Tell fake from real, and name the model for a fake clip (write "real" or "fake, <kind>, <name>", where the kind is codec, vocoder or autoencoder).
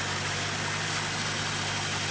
real